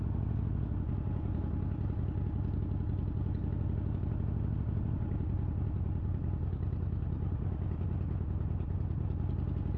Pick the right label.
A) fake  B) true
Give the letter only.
B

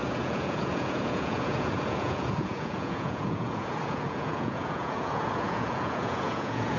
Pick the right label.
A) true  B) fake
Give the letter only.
B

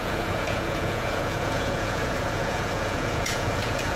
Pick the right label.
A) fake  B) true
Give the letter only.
A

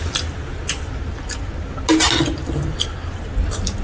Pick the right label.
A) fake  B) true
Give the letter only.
B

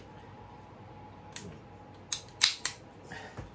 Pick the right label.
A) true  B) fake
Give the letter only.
A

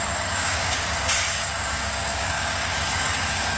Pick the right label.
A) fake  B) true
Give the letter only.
A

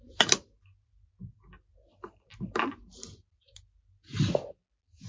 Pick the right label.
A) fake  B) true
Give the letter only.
B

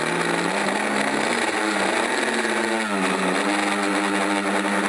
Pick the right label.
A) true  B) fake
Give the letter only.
A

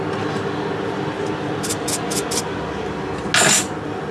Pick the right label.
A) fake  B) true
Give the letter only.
B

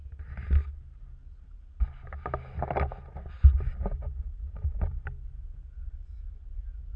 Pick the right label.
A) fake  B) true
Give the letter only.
B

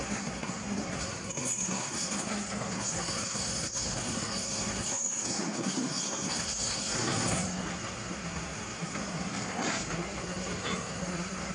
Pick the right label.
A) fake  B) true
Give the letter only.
A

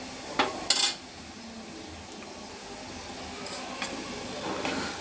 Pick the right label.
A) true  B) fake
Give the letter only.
A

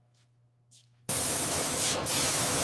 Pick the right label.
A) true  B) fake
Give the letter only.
B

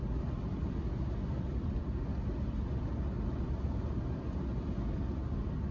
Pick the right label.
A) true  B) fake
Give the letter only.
A